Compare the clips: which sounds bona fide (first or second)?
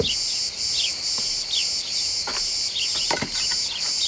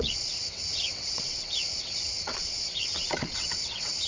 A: first